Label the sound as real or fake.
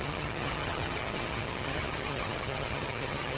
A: fake